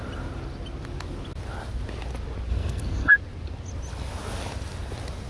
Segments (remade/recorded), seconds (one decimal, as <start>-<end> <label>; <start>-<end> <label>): 0.0-2.5 recorded; 2.5-3.1 remade; 3.1-5.3 recorded

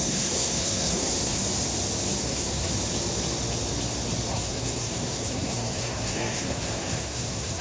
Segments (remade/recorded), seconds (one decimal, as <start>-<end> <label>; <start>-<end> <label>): 0.0-1.4 remade; 1.4-2.2 recorded; 2.2-2.7 remade; 2.7-4.3 recorded; 4.3-7.6 remade

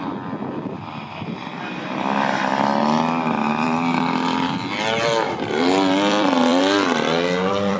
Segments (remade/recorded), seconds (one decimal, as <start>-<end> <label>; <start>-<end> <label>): 0.0-7.8 remade

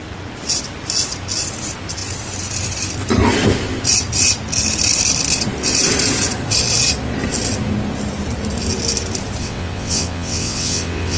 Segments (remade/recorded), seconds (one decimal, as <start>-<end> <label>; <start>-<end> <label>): 0.0-9.4 recorded; 9.4-11.2 remade

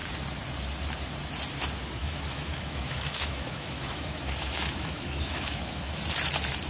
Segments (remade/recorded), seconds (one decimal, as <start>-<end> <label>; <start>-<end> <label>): 0.0-2.0 recorded; 2.0-6.0 remade; 6.0-6.7 recorded

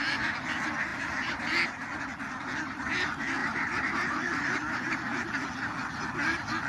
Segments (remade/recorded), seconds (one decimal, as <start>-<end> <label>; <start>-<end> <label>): 0.0-0.9 recorded; 0.9-1.4 remade; 1.4-3.4 recorded; 3.4-5.5 remade; 5.5-6.7 recorded

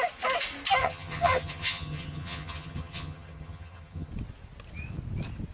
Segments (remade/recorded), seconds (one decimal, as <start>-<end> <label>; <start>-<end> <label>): 0.0-0.8 recorded; 0.8-4.1 remade; 4.1-5.5 recorded